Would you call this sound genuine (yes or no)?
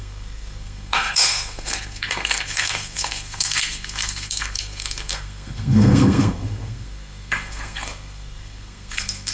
no